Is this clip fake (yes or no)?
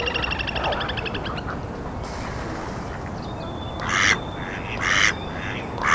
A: no